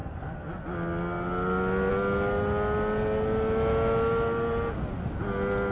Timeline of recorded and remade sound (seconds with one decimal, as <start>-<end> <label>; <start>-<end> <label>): 0.0-5.7 recorded